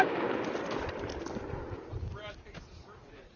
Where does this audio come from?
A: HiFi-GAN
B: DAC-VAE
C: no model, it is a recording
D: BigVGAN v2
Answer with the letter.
D